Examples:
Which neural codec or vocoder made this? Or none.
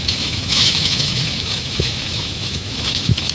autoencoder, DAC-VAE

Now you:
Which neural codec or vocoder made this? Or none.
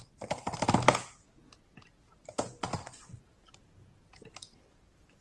none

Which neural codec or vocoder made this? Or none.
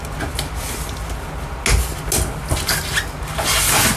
none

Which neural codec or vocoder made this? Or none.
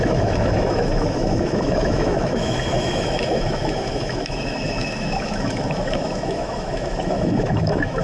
autoencoder, DAC-VAE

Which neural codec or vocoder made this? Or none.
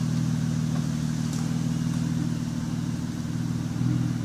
none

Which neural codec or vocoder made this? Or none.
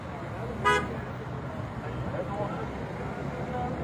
none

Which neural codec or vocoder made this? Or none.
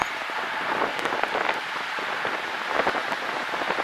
none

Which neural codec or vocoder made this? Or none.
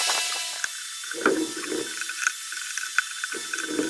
none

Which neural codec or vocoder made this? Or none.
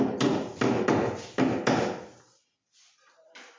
none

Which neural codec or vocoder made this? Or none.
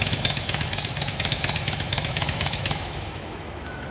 autoencoder, DAC-VAE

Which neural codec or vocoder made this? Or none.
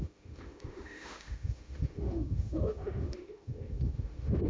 autoencoder, DAC-VAE